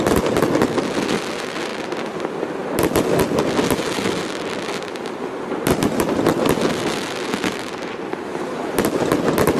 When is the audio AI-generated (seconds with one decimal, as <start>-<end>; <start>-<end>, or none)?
none